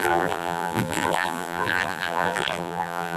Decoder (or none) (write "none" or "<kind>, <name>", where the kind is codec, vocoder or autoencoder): vocoder, BigVGAN v2